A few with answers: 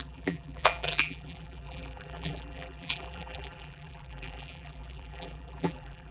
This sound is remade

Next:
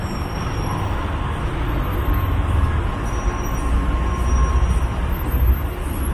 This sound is recorded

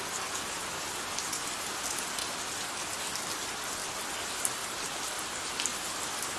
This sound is recorded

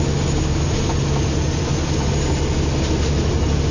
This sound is recorded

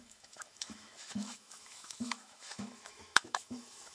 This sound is remade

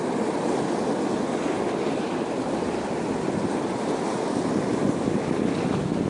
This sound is recorded